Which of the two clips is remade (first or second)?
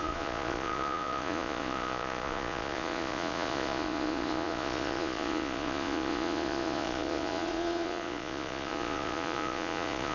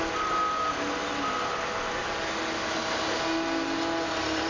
first